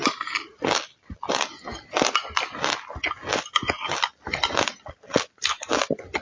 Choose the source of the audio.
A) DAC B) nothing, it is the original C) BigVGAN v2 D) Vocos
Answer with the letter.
B